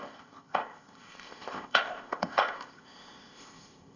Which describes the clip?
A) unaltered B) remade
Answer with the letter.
B